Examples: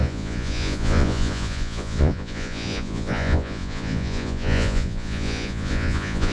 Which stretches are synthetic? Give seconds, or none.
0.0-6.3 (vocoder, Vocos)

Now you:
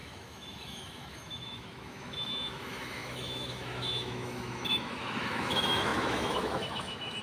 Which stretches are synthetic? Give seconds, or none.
0.0-7.2 (autoencoder, DAC-VAE)

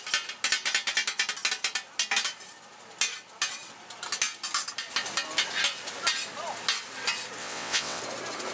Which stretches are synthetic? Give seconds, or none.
7.4-8.0 (vocoder, WaveNeXt)

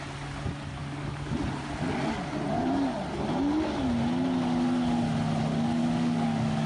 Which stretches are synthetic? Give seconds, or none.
0.8-1.3 (codec, DAC); 5.5-6.7